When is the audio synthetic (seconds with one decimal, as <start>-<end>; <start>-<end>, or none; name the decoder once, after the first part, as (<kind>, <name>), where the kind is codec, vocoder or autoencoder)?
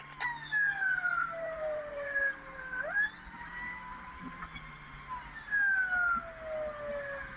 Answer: 0.8-3.5 (vocoder, BigVGAN v2); 3.9-4.4